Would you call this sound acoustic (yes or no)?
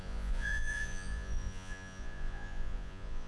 no